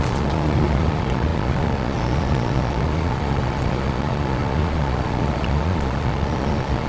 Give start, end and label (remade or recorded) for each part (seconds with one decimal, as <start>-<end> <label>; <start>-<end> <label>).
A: 0.0-6.9 remade